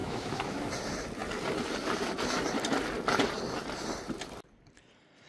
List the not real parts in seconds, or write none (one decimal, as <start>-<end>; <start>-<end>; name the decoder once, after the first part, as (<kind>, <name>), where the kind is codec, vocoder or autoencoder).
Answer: 0.0-0.7 (autoencoder, DAC-VAE)